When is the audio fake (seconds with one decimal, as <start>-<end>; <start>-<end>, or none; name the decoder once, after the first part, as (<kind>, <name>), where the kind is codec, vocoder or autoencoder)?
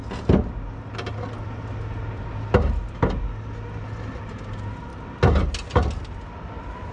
none